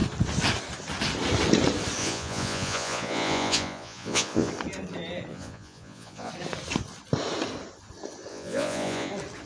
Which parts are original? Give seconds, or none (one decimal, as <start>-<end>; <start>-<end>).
0.0-2.0; 4.5-5.3; 6.3-8.3; 9.1-9.5